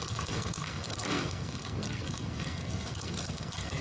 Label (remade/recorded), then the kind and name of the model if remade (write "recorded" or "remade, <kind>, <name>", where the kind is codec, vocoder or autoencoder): remade, codec, SNAC